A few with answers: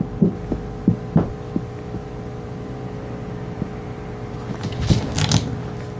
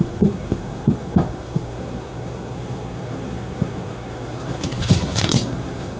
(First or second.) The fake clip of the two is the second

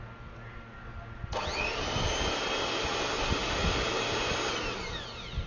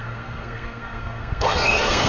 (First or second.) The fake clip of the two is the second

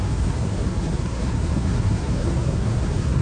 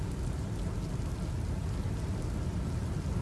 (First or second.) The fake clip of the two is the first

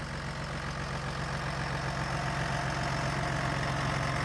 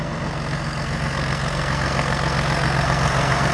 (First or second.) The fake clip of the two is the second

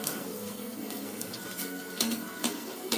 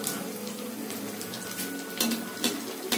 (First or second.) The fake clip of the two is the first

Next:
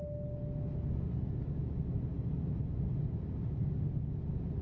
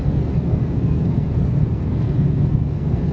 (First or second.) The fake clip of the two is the second